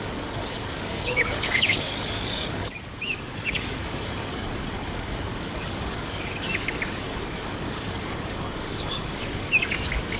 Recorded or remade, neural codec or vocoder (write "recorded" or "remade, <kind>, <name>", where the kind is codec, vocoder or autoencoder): remade, codec, DAC